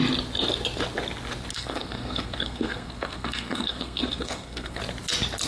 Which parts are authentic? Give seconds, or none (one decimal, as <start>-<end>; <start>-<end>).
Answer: 0.0-1.5; 4.8-5.5